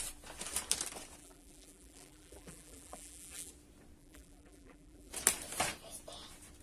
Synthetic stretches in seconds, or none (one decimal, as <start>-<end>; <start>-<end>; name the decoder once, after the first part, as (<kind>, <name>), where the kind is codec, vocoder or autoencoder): 1.2-3.5 (vocoder, BigVGAN v2); 4.0-5.1